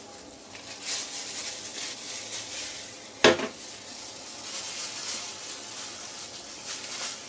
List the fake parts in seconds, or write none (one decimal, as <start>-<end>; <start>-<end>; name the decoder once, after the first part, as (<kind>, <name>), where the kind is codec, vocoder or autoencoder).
none